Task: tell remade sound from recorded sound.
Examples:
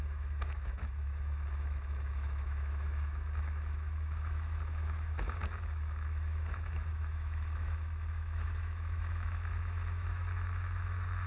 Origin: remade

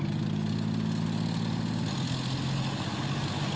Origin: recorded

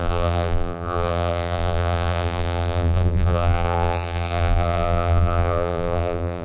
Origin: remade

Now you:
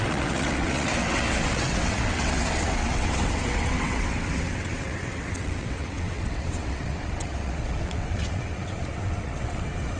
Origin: remade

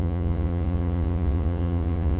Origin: remade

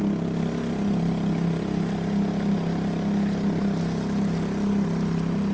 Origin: recorded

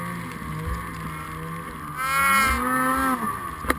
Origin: recorded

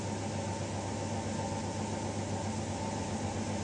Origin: recorded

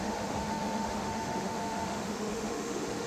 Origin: remade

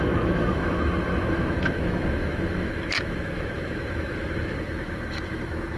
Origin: remade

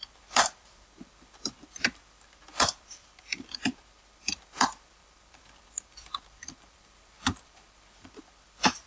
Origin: remade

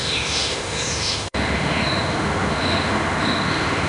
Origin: remade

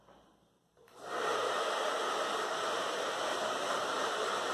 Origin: remade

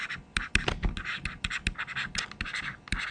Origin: recorded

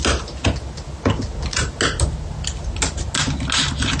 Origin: recorded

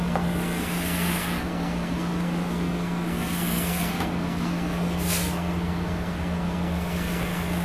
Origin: remade